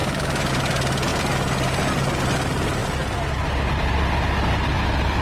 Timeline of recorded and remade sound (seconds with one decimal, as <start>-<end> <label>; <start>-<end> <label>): 0.0-0.5 remade; 0.5-5.2 recorded